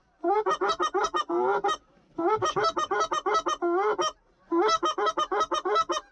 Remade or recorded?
recorded